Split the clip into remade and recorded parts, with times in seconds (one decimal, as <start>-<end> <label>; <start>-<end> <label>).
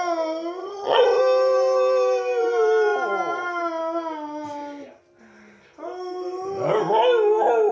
0.0-0.6 recorded; 0.6-1.2 remade; 1.2-7.7 recorded